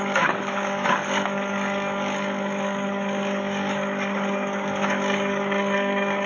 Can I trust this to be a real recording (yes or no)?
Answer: no